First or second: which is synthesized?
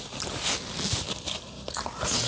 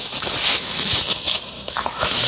second